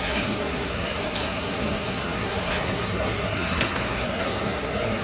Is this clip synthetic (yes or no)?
yes